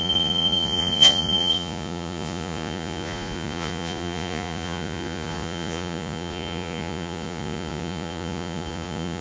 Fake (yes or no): yes